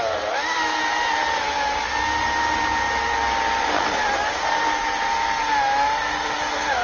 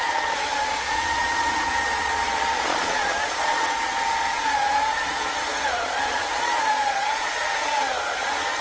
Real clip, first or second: first